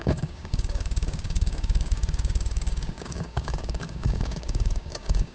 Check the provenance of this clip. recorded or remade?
remade